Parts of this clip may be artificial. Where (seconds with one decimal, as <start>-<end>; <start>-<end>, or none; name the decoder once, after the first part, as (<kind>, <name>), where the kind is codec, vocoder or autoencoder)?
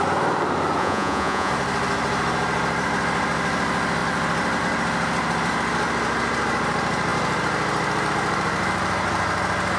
0.8-1.5 (vocoder, Vocos)